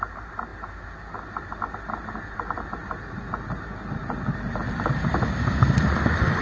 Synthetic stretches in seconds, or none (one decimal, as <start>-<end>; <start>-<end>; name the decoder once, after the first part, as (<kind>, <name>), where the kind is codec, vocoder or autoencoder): 0.0-0.5 (vocoder, BigVGAN v2); 4.3-6.4